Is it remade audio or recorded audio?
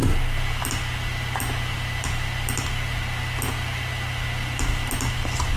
recorded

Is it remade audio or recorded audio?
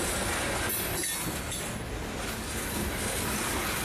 recorded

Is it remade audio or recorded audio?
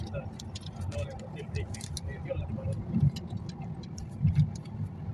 recorded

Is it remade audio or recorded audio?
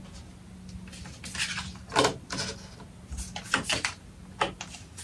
recorded